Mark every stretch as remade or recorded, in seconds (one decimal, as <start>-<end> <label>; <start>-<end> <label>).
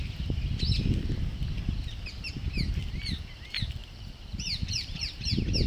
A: 0.0-3.8 recorded; 3.8-5.2 remade; 5.2-5.7 recorded